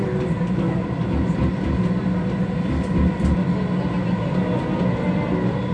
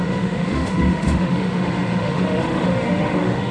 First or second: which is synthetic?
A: second